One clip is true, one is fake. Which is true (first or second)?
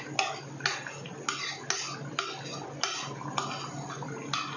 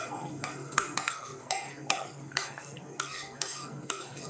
first